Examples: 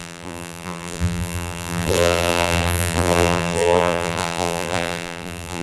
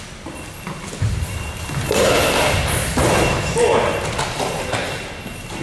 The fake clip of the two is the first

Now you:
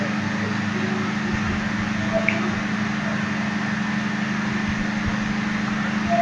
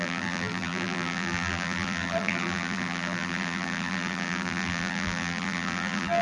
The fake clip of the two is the second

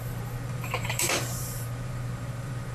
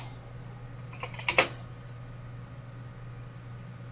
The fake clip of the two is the first